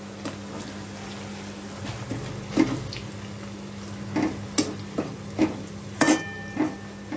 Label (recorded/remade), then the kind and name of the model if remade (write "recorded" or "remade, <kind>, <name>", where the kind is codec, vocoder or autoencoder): recorded